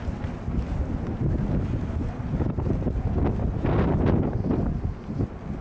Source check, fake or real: real